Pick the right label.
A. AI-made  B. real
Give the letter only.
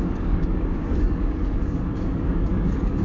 A